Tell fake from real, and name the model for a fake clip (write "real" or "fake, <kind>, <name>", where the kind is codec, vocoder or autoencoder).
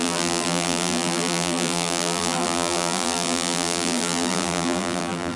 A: fake, vocoder, BigVGAN v2